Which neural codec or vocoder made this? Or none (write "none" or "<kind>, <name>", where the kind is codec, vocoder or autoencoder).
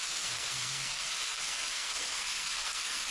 codec, SNAC